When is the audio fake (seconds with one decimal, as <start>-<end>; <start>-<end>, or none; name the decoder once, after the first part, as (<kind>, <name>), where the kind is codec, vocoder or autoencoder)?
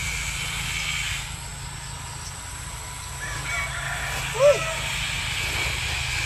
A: none